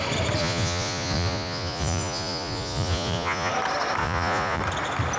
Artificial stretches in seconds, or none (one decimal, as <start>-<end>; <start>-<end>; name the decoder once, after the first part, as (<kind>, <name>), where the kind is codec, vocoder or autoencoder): 0.4-3.5 (vocoder, Vocos); 4.0-4.6